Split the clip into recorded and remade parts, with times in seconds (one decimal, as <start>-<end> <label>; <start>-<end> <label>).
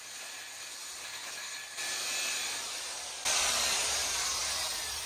0.0-5.1 recorded